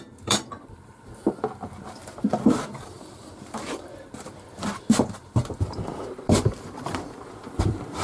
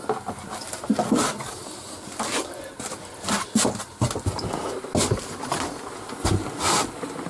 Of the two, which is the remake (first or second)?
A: first